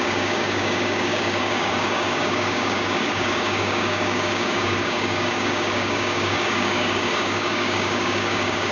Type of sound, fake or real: fake